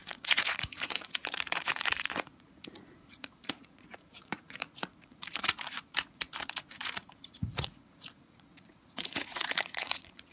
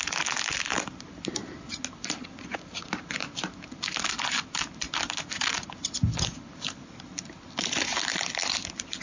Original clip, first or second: second